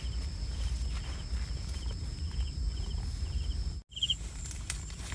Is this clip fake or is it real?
real